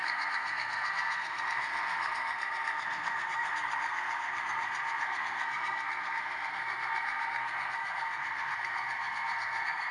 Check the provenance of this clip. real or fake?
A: fake